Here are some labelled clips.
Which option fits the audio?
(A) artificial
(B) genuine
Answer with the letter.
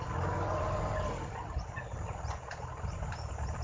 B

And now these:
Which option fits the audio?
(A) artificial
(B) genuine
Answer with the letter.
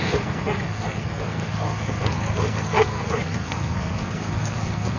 A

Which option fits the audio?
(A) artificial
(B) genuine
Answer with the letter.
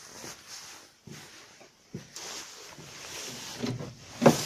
B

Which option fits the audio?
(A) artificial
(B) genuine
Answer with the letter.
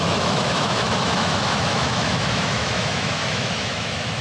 A